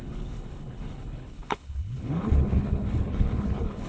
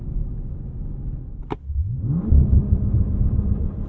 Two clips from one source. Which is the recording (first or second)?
second